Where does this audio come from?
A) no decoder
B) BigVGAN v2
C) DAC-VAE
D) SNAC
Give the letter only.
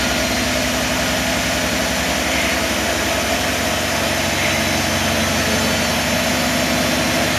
A